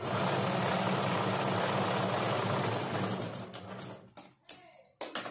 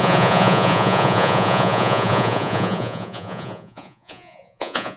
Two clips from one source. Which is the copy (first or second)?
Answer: second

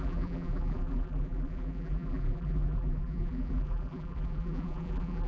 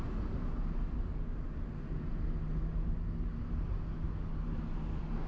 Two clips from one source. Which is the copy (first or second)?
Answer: first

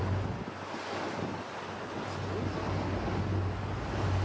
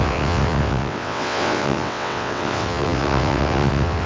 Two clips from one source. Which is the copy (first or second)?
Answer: second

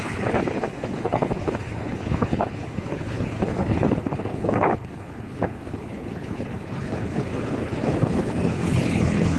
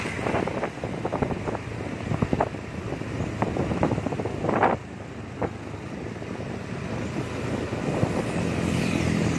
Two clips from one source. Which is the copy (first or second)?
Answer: first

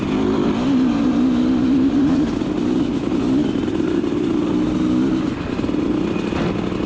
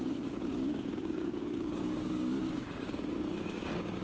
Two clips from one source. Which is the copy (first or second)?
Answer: second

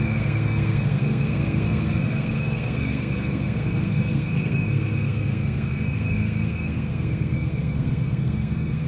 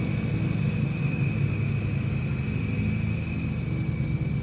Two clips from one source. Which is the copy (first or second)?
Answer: first